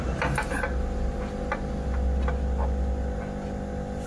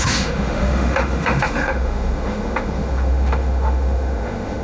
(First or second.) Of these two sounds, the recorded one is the first